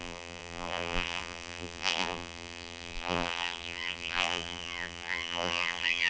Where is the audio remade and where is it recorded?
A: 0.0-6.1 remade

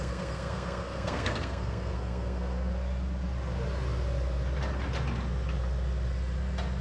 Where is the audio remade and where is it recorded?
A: 0.0-2.7 remade; 2.7-6.8 recorded

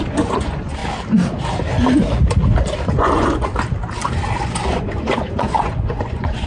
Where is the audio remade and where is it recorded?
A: 0.0-0.8 remade; 0.8-2.8 recorded; 2.8-3.5 remade; 3.5-4.4 recorded; 4.4-6.5 remade

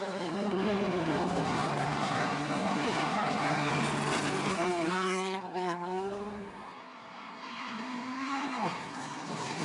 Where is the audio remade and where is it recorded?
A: 0.0-3.7 remade; 3.7-4.5 recorded; 4.5-9.6 remade

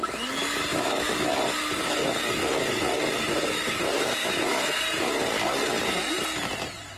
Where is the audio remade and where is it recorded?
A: 0.0-0.7 recorded; 0.7-1.3 remade; 1.3-4.2 recorded; 4.2-4.8 remade; 4.8-7.0 recorded